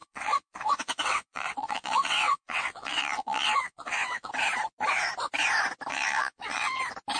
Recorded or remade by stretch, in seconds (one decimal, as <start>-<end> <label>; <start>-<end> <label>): 0.0-4.3 remade; 4.3-5.9 recorded; 5.9-6.8 remade; 6.8-7.2 recorded